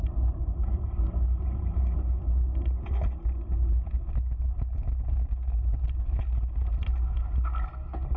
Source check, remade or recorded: recorded